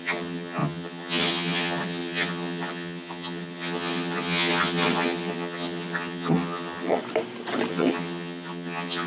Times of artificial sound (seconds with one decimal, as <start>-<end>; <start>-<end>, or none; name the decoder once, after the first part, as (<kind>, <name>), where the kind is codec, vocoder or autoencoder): 0.0-7.0 (vocoder, HiFi-GAN); 7.7-9.1

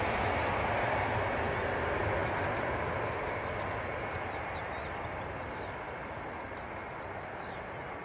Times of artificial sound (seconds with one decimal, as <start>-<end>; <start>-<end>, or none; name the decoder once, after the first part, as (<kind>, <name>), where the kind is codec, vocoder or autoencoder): none

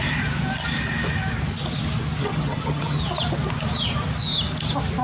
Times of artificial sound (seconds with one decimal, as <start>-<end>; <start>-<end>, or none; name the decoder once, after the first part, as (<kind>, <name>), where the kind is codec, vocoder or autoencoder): 2.2-3.0 (vocoder, HiFi-GAN)

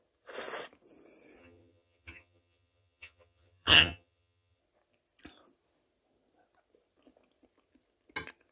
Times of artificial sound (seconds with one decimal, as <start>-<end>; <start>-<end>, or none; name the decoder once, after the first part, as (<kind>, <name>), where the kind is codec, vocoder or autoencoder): 1.4-4.6 (vocoder, HiFi-GAN)

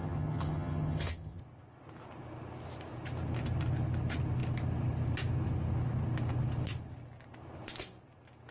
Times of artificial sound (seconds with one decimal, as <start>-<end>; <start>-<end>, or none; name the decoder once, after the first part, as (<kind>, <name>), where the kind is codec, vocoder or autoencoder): 0.0-1.4 (vocoder, HiFi-GAN)

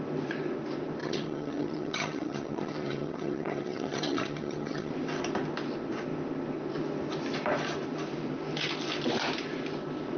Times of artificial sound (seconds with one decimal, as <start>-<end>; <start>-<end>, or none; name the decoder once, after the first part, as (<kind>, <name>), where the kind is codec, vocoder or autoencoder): 1.0-4.9 (vocoder, HiFi-GAN)

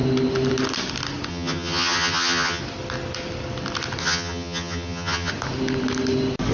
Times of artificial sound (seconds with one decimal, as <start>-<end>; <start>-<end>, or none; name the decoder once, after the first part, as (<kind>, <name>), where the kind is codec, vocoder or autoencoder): 1.3-2.6 (vocoder, HiFi-GAN); 4.0-5.3